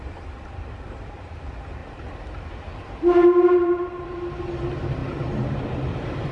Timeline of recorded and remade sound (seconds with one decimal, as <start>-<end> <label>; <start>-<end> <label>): 0.0-5.0 recorded; 5.0-6.3 remade